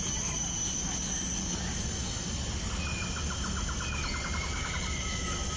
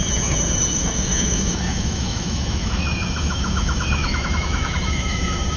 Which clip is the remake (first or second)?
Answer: second